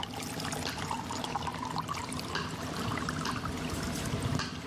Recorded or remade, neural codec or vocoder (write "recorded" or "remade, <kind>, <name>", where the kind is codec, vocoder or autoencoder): recorded